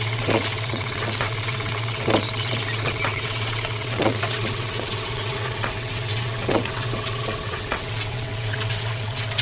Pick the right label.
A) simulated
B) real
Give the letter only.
A